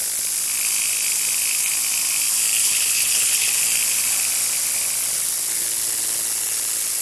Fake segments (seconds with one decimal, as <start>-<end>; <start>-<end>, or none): 2.6-3.6